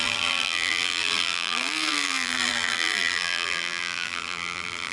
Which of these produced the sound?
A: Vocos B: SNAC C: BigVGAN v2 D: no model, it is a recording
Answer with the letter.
C